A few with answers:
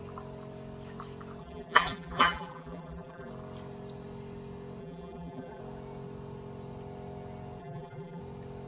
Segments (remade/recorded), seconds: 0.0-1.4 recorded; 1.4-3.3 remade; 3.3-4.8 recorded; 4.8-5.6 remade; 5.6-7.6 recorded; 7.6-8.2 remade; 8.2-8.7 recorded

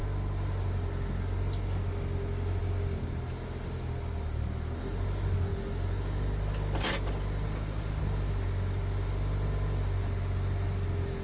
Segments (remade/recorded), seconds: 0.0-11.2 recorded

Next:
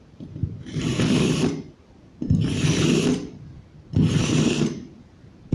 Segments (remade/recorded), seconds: 0.0-0.9 remade; 0.9-4.2 recorded; 4.2-5.5 remade

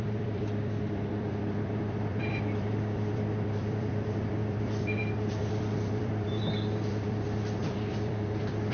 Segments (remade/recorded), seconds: 0.0-8.7 remade

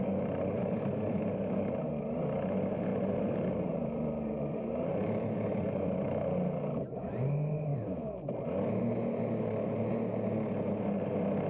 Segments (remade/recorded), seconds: 0.0-0.6 recorded; 0.6-1.2 remade; 1.2-2.9 recorded; 2.9-6.0 remade; 6.0-11.5 recorded

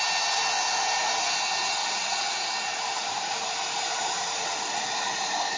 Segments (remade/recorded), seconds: 0.0-1.8 recorded; 1.8-2.3 remade; 2.3-2.7 recorded; 2.7-4.6 remade; 4.6-5.6 recorded

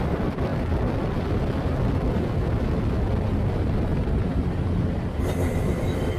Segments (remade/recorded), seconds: 0.0-3.9 recorded; 3.9-6.2 remade

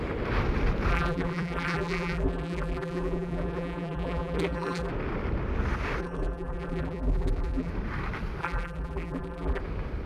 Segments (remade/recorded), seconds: 0.0-0.9 recorded; 0.9-4.9 remade; 4.9-6.0 recorded; 6.0-7.7 remade; 7.7-8.4 recorded; 8.4-9.6 remade; 9.6-10.1 recorded